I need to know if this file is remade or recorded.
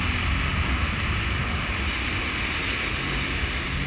recorded